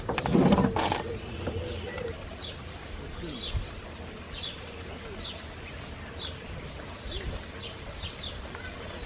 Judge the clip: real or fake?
real